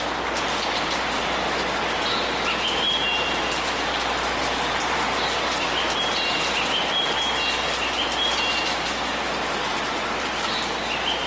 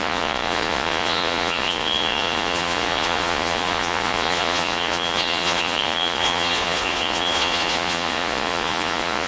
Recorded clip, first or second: first